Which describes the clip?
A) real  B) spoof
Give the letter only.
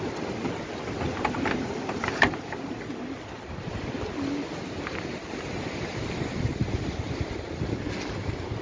A